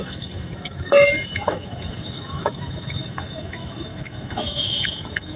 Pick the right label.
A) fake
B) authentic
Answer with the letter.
A